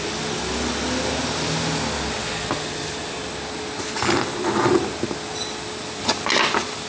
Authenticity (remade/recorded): recorded